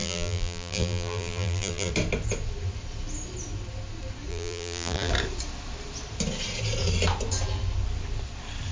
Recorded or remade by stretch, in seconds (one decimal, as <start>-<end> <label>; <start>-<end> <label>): 0.0-1.9 remade; 1.9-4.3 recorded; 4.3-5.1 remade; 5.1-8.7 recorded